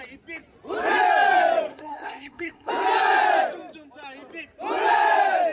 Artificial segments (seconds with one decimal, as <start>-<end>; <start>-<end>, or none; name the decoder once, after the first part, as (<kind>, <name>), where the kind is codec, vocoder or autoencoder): 1.7-2.7 (codec, SNAC)